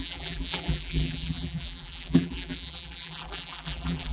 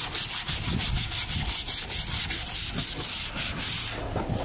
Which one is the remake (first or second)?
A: first